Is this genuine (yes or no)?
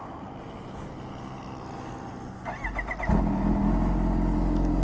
yes